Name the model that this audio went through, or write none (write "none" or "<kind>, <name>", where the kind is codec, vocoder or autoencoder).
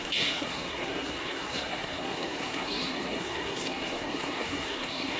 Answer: codec, SNAC